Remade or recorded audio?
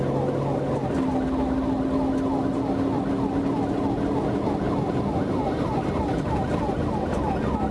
recorded